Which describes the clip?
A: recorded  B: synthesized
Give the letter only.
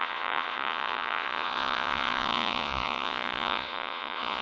B